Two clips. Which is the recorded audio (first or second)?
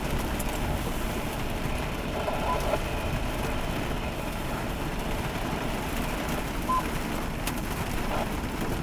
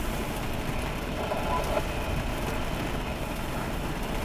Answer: second